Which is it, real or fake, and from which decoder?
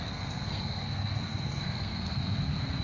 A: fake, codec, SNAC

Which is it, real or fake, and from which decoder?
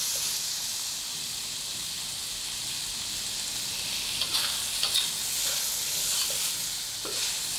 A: real